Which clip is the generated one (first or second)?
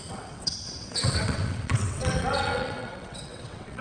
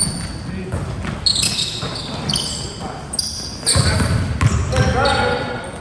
first